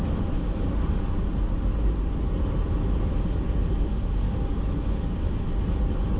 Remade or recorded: recorded